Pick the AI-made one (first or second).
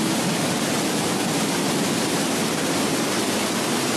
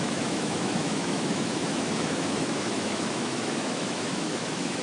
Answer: second